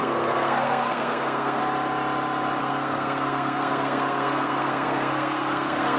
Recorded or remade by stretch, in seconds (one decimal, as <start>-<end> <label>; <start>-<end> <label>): 0.0-1.6 remade; 1.6-2.6 recorded; 2.6-6.0 remade